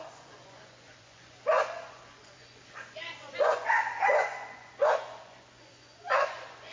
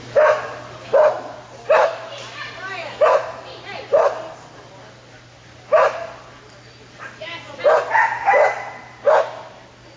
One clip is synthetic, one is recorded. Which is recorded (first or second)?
second